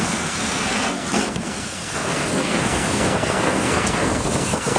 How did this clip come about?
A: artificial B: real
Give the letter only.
A